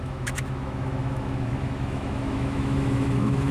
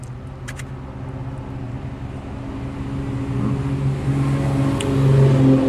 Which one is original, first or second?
second